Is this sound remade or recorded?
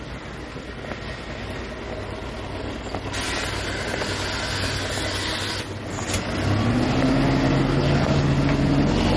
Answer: recorded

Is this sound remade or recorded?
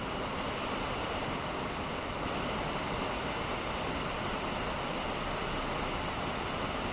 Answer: recorded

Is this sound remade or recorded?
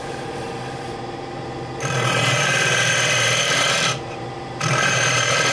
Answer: remade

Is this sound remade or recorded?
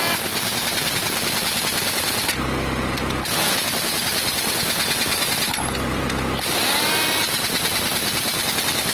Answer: recorded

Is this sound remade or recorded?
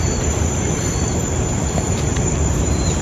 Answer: remade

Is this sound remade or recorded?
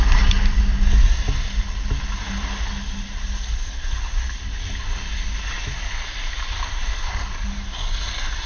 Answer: recorded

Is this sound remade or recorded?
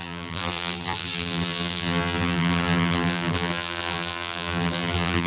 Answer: remade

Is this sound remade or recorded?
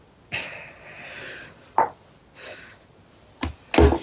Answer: recorded